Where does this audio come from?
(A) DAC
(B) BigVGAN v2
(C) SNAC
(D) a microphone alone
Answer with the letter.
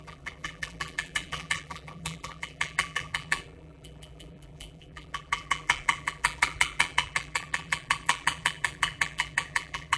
B